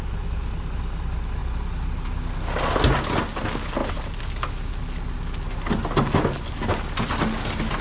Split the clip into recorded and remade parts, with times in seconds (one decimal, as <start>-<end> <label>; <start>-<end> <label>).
0.0-7.8 recorded